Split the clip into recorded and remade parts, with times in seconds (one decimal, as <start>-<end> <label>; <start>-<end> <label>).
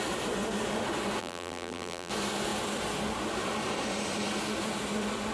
0.0-1.2 recorded; 1.2-2.1 remade; 2.1-5.3 recorded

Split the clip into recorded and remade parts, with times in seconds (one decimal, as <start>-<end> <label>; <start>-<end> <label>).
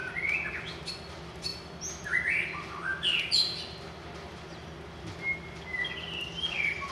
0.0-6.9 recorded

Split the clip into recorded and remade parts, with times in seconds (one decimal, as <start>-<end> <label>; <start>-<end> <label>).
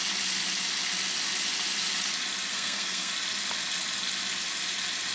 0.0-2.5 recorded; 2.5-3.1 remade; 3.1-5.1 recorded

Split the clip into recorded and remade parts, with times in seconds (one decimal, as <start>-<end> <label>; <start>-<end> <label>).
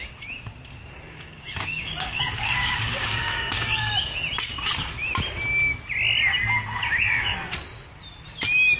0.0-1.1 recorded; 1.1-3.9 remade; 3.9-8.8 recorded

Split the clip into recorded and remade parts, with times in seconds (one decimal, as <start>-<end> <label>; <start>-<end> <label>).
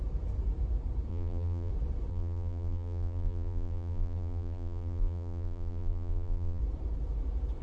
0.0-1.1 recorded; 1.1-1.7 remade; 1.7-2.1 recorded; 2.1-6.6 remade; 6.6-7.6 recorded